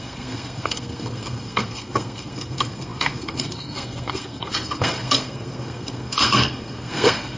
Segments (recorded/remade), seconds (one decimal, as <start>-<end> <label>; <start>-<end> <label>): 0.0-7.4 remade